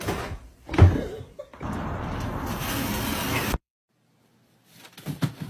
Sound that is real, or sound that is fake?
fake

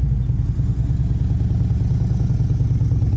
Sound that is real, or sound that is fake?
real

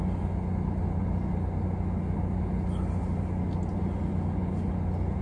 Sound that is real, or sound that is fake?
real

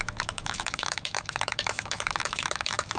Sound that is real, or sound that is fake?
fake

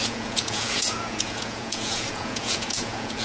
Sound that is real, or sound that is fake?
fake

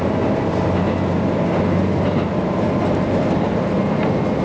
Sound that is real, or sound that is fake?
real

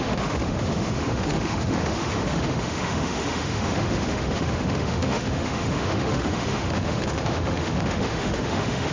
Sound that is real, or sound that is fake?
fake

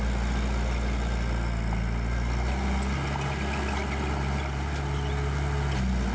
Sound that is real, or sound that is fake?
real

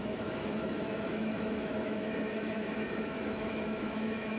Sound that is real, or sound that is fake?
fake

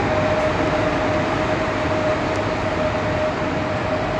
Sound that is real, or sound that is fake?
real